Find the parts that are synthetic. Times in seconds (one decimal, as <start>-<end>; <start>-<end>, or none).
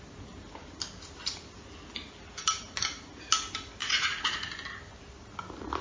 3.8-4.5